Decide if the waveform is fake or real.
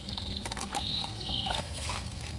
fake